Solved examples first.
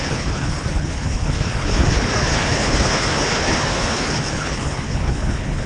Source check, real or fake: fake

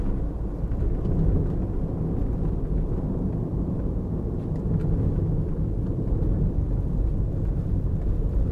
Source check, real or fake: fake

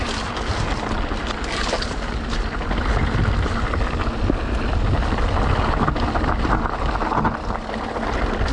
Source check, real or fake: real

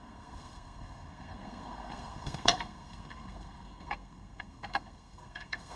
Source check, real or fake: fake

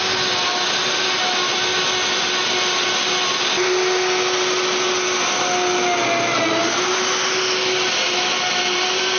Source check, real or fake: real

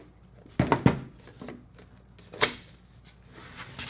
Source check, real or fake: real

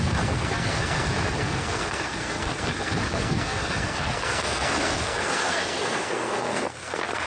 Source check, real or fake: fake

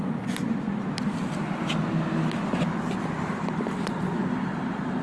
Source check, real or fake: real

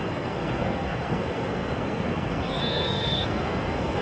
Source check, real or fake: fake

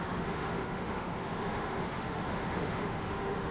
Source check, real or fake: fake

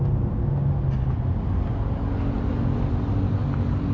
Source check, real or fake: real